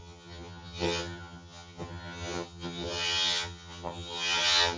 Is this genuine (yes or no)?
no